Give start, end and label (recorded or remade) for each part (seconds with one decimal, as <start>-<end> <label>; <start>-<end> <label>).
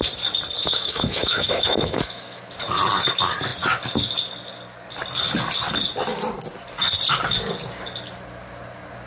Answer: 0.0-0.6 recorded; 0.6-2.5 remade; 2.5-9.1 recorded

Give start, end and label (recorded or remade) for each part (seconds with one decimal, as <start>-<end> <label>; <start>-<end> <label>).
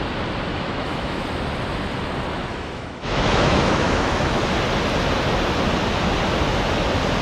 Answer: 0.0-0.5 recorded; 0.5-1.2 remade; 1.2-2.5 recorded; 2.5-4.4 remade; 4.4-7.2 recorded